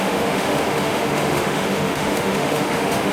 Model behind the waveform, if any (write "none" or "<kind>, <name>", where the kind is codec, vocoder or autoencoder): autoencoder, DAC-VAE